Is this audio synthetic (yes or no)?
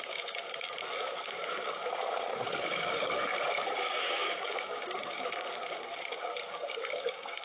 yes